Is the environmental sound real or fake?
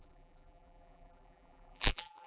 fake